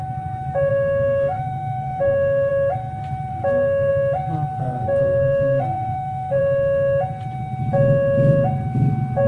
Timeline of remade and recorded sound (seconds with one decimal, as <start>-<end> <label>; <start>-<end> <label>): 0.0-0.7 recorded; 0.7-2.5 remade; 2.5-3.3 recorded; 3.3-3.9 remade; 3.9-4.6 recorded; 4.6-6.4 remade; 6.4-9.3 recorded